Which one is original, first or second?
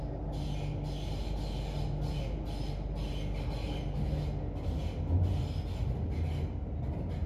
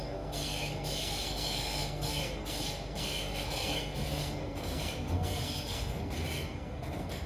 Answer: first